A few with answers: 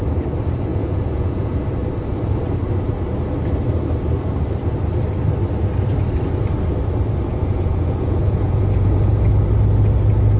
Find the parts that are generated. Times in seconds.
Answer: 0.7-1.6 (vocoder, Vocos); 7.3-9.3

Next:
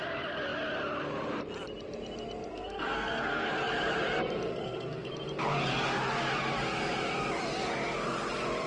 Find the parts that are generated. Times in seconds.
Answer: 2.5-3.5 (codec, SNAC); 4.5-5.1